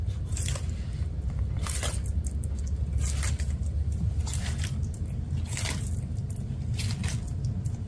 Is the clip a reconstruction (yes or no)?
no